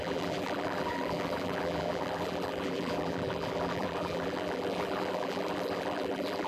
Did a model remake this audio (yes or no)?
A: yes